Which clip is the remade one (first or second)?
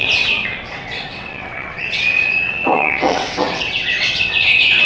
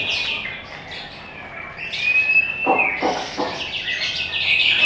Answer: first